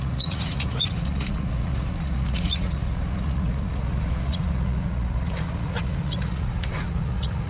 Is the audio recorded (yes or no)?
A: no